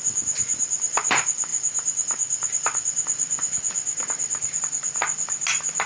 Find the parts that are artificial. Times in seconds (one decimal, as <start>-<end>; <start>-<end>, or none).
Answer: none